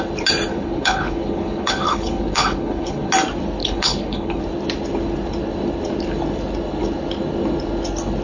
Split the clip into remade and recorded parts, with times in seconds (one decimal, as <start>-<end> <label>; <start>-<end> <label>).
0.0-0.5 recorded; 0.5-3.1 remade; 3.1-3.6 recorded; 3.6-4.4 remade; 4.4-8.2 recorded